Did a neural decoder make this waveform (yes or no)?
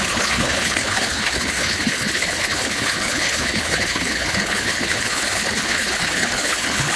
yes